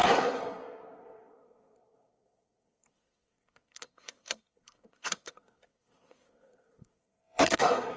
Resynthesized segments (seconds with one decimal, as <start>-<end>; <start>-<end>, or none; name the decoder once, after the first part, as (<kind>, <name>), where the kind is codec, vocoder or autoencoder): 0.0-8.0 (codec, SNAC)